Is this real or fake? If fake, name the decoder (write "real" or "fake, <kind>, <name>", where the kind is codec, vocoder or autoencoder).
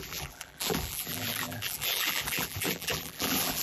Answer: fake, vocoder, BigVGAN v2